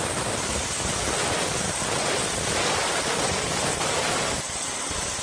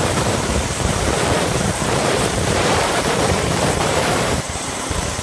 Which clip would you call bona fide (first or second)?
first